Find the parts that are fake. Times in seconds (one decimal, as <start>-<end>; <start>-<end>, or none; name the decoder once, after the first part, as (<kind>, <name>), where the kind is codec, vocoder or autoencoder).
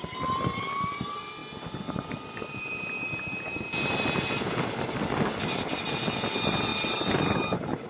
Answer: none